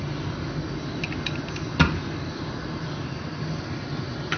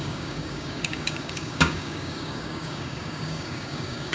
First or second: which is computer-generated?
second